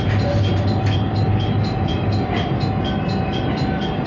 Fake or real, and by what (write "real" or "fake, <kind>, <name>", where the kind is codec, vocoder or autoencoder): real